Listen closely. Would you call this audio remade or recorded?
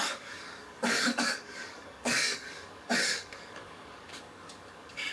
remade